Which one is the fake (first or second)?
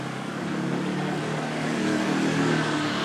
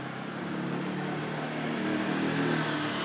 first